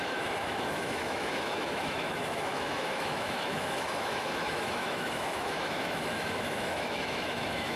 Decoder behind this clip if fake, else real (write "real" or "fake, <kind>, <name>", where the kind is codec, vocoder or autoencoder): fake, autoencoder, DAC-VAE